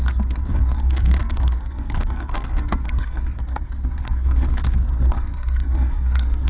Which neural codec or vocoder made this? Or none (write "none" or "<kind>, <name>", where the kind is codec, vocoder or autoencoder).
codec, SNAC